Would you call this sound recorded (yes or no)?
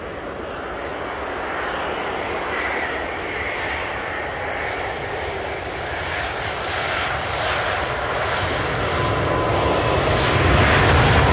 yes